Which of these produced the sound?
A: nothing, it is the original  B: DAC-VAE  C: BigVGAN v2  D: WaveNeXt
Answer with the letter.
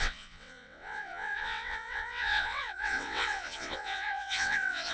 D